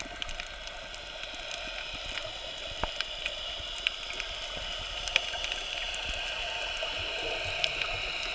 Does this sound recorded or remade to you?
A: recorded